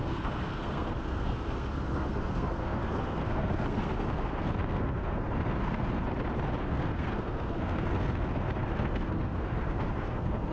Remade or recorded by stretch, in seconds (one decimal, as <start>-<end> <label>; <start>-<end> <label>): 0.0-6.0 remade; 6.0-6.6 recorded; 6.6-10.5 remade